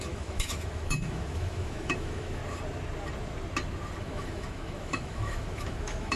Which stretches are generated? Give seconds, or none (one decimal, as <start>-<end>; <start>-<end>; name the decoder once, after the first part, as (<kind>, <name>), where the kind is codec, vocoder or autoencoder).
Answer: 0.0-2.4 (autoencoder, DAC-VAE); 4.0-6.2